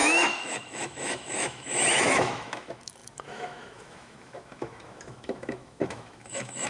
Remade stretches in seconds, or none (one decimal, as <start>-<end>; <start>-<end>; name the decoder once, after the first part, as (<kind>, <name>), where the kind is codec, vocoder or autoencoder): 0.0-6.7 (autoencoder, DAC-VAE)